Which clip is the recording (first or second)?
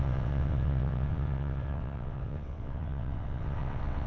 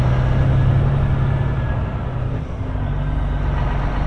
second